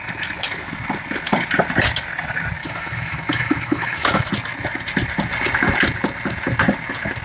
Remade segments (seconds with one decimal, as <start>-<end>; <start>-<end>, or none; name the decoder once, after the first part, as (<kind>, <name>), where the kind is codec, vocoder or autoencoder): 2.6-4.3 (autoencoder, DAC-VAE)